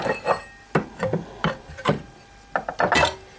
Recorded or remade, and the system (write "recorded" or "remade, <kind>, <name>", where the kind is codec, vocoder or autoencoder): recorded